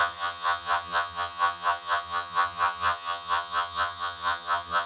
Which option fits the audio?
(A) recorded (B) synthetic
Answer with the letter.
B